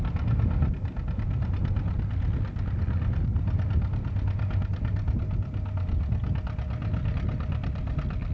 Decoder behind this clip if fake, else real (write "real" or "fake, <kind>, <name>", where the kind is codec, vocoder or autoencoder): real